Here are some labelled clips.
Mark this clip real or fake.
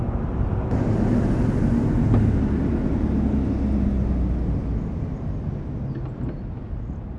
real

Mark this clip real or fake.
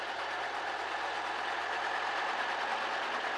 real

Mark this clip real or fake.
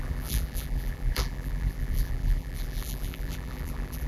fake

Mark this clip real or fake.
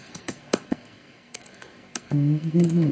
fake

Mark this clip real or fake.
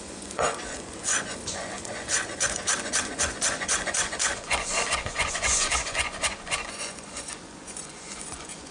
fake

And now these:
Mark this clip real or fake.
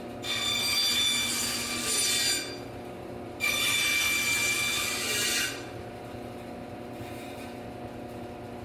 real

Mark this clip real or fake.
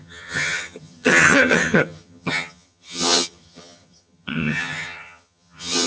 fake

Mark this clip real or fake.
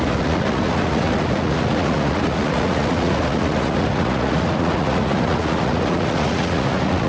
fake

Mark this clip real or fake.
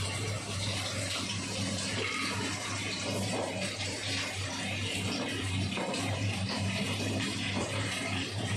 fake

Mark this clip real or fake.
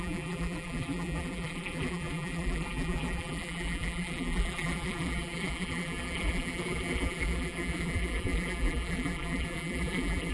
fake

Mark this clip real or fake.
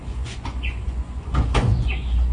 fake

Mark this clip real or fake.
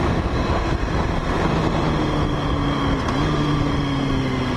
real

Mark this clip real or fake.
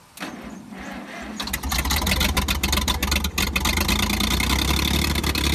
real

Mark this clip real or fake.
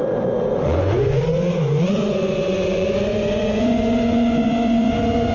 fake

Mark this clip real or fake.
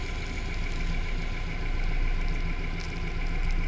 real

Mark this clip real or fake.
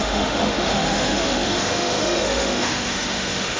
fake